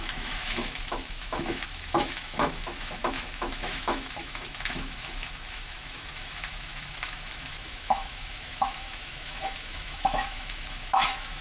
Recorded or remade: remade